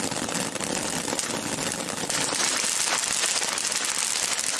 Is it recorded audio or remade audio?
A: recorded